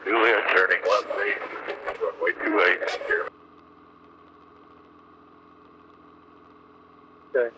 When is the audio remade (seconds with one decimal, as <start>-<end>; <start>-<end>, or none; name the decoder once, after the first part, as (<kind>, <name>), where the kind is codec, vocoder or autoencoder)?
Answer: 0.5-1.8 (vocoder, BigVGAN v2); 2.5-3.5